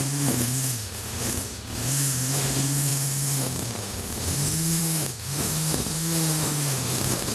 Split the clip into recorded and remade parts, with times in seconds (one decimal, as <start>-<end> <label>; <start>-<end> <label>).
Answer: 0.0-7.3 remade